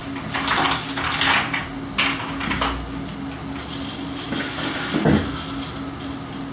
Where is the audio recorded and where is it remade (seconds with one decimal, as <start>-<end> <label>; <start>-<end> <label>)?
0.0-6.5 recorded